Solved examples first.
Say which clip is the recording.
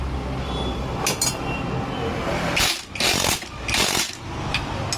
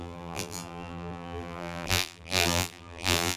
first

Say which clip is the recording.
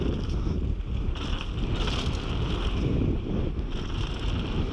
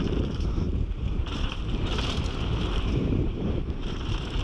first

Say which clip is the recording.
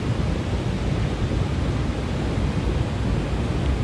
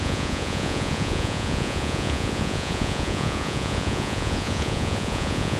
first